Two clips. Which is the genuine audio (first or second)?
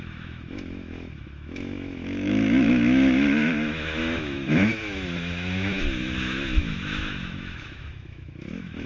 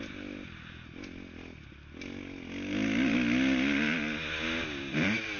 second